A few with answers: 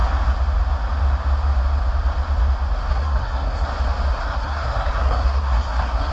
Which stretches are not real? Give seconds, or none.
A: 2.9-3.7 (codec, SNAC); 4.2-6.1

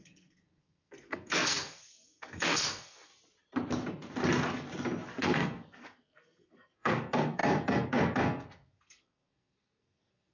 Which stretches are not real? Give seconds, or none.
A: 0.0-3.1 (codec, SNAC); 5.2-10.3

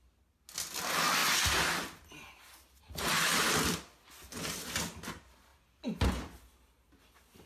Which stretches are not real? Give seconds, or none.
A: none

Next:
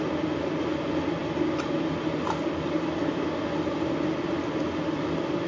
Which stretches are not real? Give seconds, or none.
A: none

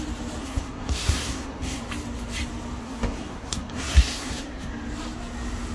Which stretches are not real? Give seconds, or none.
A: 0.4-1.8 (codec, SNAC); 2.8-4.7

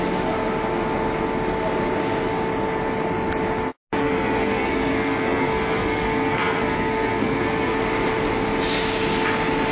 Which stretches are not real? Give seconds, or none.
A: 4.0-7.8 (codec, SNAC)

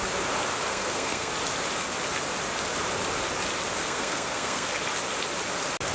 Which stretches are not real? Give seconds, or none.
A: 0.7-1.3 (codec, SNAC); 3.8-4.7